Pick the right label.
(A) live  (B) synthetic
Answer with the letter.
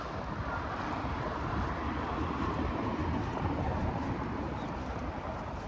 B